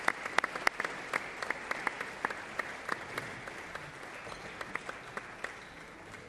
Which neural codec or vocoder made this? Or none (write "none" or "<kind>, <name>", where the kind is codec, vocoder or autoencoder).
none